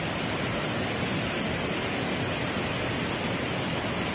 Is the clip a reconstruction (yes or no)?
no